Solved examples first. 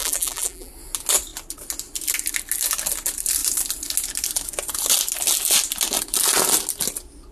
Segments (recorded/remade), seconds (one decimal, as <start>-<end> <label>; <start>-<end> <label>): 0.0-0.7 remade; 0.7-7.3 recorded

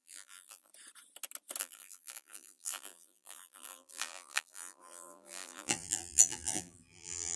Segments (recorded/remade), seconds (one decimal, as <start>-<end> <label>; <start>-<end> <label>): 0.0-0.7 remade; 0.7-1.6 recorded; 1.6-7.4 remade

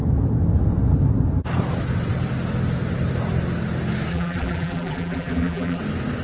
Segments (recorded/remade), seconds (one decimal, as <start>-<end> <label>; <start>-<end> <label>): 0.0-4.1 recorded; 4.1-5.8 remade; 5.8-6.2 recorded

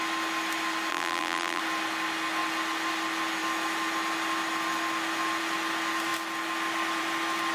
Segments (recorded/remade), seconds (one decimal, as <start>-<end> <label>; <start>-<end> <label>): 0.0-0.9 recorded; 0.9-1.6 remade; 1.6-7.5 recorded